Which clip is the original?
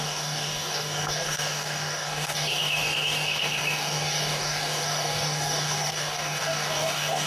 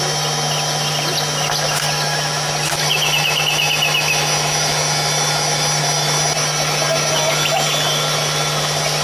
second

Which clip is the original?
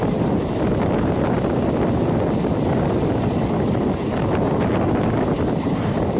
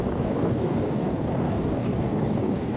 first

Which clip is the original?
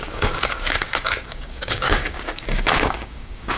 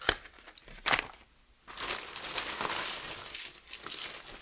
second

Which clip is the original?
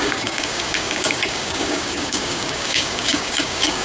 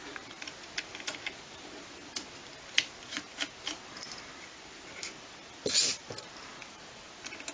second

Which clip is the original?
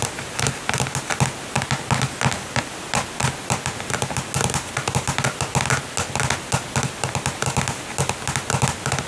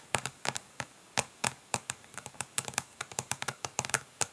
first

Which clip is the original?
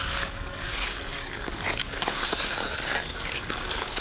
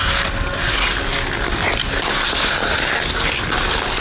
second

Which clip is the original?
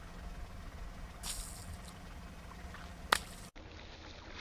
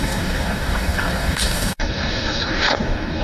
first